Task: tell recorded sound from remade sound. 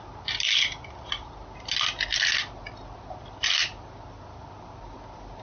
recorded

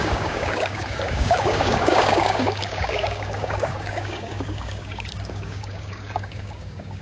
remade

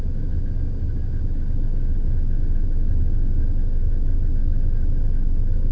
recorded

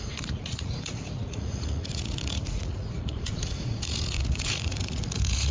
remade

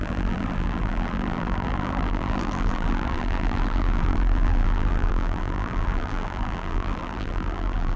remade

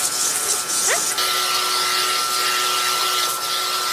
recorded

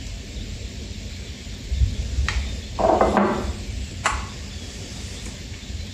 remade